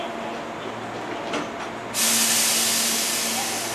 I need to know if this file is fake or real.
real